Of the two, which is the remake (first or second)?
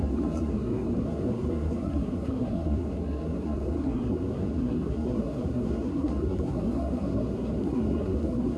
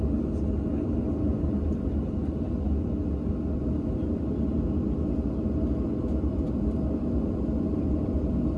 first